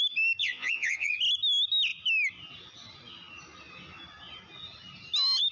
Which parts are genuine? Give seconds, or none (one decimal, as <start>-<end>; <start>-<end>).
0.0-0.4; 1.2-5.5